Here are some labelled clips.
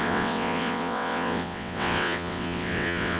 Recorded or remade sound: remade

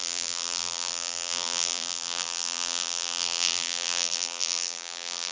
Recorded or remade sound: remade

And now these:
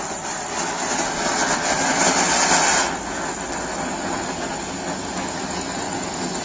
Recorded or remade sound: recorded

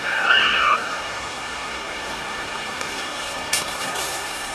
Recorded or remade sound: remade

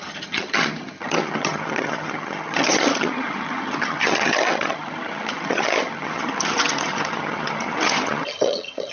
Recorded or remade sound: remade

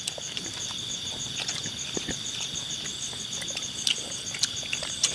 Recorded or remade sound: recorded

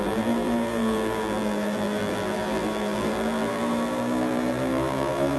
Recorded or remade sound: remade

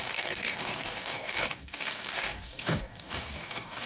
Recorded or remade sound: remade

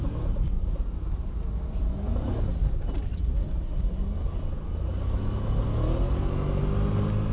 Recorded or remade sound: recorded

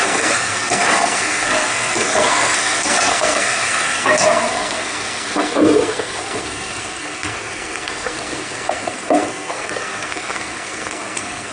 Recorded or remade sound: remade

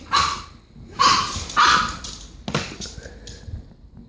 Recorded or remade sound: recorded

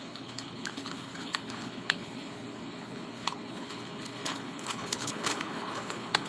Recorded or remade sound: remade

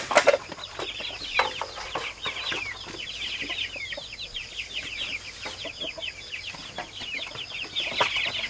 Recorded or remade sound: recorded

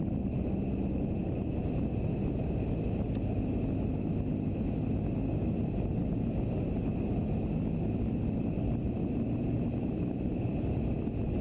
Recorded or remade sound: recorded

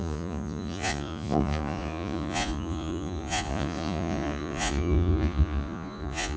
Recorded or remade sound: remade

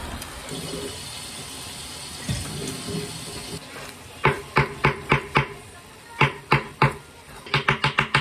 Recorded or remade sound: recorded